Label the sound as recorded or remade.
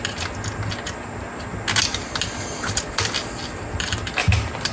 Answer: recorded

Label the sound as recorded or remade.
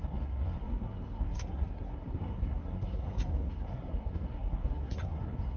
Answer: remade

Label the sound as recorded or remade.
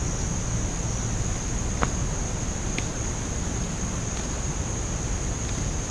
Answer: recorded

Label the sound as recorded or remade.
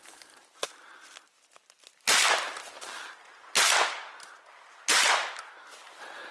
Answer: recorded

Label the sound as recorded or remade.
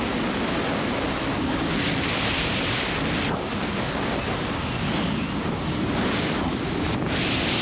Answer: recorded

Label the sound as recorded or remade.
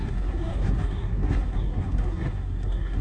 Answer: remade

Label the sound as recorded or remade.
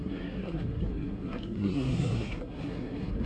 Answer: remade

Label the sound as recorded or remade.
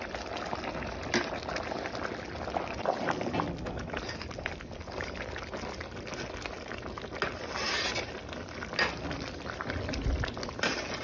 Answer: recorded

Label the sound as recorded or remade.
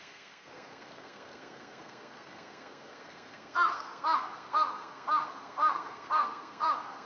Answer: remade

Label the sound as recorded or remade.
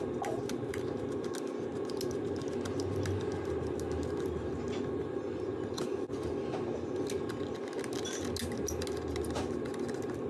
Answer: recorded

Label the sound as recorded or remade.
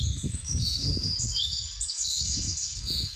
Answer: remade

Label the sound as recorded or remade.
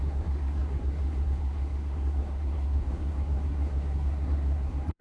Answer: remade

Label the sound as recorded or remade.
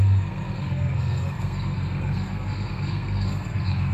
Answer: remade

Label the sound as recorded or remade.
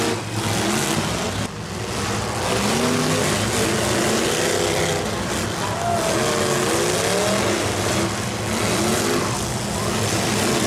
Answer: recorded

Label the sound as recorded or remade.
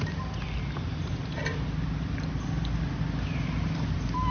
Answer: recorded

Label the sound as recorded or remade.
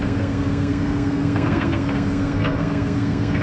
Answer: remade